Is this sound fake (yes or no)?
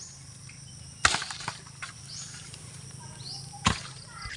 no